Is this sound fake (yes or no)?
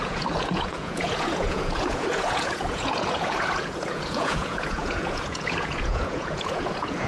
yes